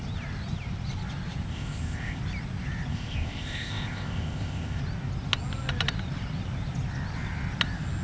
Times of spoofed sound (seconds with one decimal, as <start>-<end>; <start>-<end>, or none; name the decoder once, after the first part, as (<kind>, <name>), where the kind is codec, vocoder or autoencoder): 1.5-2.2 (codec, ZipCodec); 2.9-4.8